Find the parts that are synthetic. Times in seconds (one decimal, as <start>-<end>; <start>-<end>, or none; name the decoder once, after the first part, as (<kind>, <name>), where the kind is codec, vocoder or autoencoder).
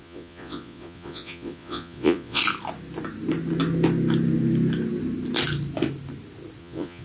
0.0-2.4 (vocoder, Vocos); 6.6-7.0